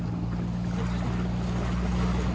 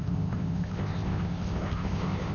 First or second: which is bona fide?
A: first